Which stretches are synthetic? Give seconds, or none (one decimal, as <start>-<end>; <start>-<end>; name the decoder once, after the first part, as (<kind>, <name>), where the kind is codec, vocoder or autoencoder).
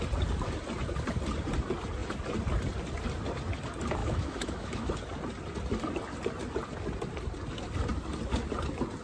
4.0-4.9 (autoencoder, DAC-VAE)